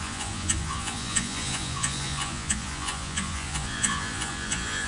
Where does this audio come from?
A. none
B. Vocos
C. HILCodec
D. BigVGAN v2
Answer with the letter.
B